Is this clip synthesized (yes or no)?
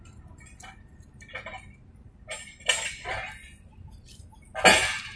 no